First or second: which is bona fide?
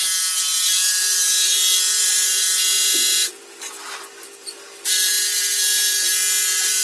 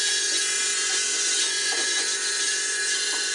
first